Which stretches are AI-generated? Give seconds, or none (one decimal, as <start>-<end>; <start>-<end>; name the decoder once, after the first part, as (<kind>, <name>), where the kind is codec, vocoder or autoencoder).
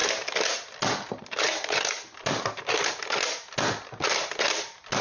none